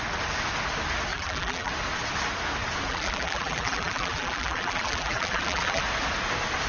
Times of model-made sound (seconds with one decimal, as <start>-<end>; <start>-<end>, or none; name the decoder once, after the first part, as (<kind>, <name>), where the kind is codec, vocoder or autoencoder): 1.1-1.7 (vocoder, BigVGAN v2); 2.9-5.8